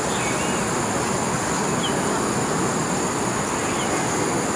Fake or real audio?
real